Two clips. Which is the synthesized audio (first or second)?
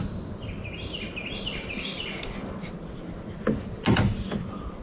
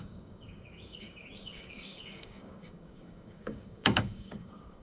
second